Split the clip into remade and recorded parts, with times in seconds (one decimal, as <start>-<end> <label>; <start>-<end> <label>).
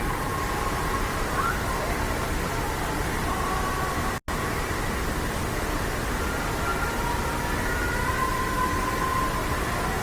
0.0-10.0 recorded